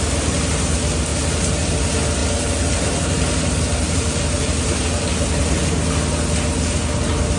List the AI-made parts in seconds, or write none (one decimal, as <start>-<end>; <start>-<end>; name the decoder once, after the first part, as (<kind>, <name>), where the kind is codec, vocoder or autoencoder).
1.1-1.7 (vocoder, BigVGAN v2); 2.2-5.7